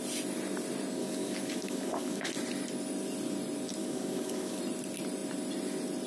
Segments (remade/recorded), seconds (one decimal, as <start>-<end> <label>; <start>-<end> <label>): 0.0-1.0 recorded; 1.0-2.3 remade; 2.3-3.8 recorded; 3.8-4.6 remade; 4.6-6.1 recorded